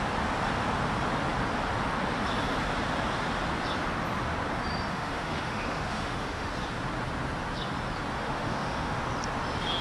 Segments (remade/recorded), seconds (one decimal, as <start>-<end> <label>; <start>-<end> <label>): 0.0-4.9 recorded; 4.9-6.5 remade; 6.5-8.1 recorded; 8.1-9.0 remade; 9.0-9.8 recorded